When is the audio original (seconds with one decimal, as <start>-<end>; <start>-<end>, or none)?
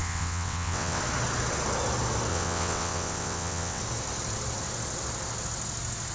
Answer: 1.0-2.3; 3.8-6.1